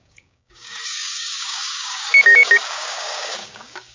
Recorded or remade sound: remade